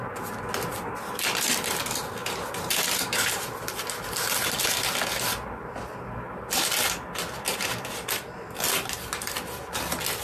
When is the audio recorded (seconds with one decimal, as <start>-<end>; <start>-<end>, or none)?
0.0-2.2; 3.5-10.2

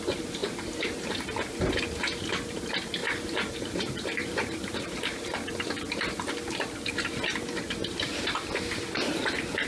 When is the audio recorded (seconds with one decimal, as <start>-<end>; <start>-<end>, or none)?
0.0-0.4; 1.8-3.0; 5.5-7.8; 8.4-9.7

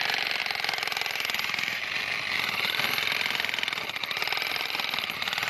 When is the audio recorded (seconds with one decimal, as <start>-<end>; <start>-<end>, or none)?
0.0-0.4; 1.8-5.5

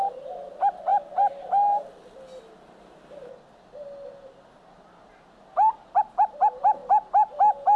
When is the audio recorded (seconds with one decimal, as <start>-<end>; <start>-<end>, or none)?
0.0-7.8

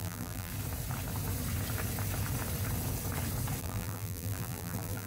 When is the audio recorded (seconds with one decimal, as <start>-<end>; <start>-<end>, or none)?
0.5-3.6

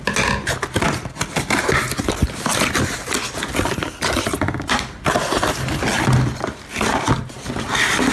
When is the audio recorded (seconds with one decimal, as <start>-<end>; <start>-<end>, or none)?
0.0-8.1

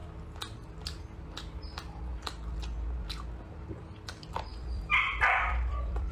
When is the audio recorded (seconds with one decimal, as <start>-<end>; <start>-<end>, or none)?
0.0-3.7